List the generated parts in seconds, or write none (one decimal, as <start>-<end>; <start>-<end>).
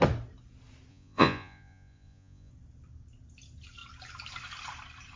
0.9-2.5